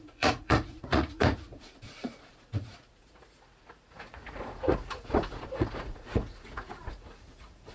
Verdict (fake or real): fake